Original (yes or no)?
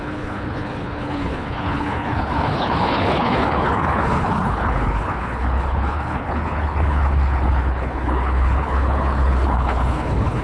no